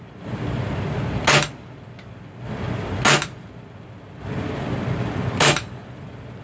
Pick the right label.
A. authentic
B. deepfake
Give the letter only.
A